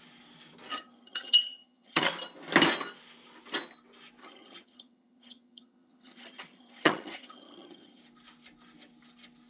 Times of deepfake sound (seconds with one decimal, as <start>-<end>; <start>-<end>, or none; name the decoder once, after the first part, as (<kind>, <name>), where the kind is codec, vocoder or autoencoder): 0.7-2.1 (vocoder, HiFi-GAN); 4.2-8.0